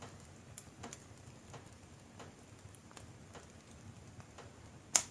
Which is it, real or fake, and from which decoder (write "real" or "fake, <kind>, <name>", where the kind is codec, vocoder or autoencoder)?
real